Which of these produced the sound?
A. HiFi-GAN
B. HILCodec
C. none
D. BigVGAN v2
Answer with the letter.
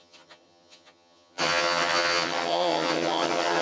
A